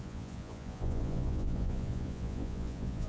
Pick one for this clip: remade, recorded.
remade